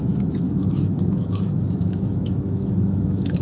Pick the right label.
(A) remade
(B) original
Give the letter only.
A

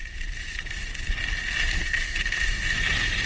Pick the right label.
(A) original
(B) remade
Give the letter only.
A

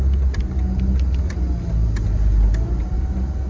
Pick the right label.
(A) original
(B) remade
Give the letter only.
A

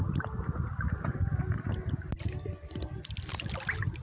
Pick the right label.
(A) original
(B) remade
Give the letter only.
A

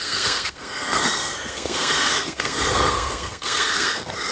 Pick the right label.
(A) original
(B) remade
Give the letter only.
B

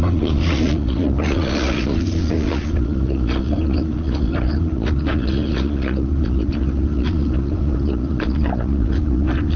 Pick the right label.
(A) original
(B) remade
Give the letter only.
B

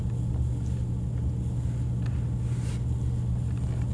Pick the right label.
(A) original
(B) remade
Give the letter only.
A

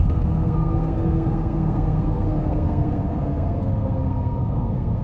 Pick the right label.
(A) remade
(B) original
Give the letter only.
A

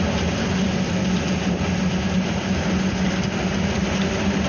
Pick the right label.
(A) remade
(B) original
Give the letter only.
B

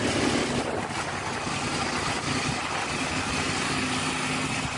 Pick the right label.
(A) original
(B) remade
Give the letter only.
A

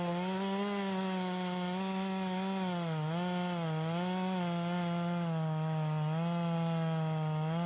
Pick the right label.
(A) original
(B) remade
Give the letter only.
A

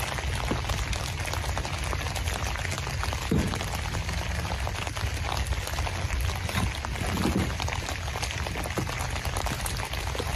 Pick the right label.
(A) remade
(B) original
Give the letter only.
B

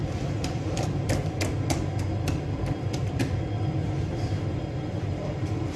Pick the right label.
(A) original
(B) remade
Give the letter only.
B